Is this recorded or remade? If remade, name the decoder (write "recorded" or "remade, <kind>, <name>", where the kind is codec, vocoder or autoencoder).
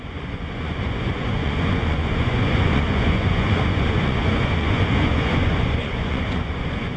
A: remade, vocoder, Vocos